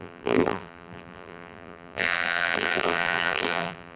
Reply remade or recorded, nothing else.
remade